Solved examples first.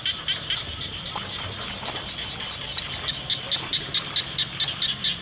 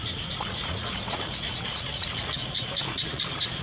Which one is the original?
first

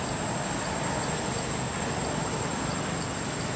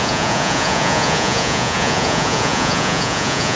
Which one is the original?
first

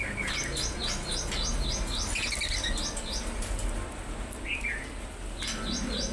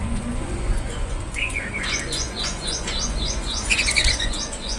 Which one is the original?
first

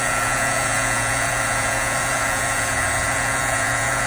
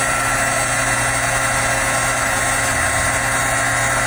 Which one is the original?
second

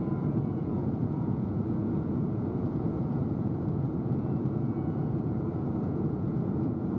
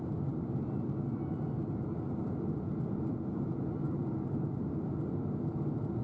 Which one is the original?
second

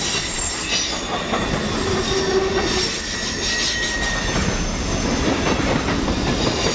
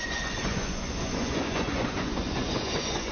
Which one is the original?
first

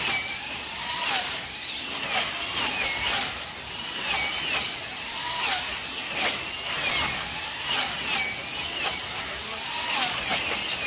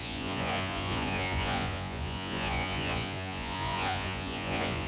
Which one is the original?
first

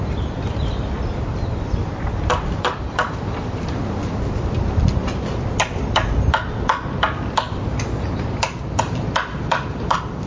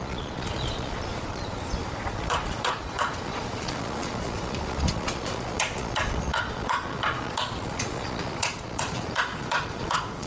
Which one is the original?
first